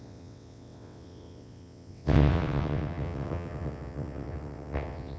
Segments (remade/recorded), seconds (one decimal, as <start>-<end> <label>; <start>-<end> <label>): 0.0-5.2 remade